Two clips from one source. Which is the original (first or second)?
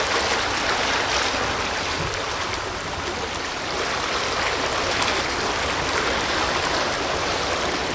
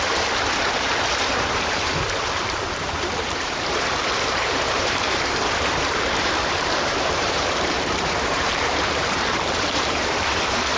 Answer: first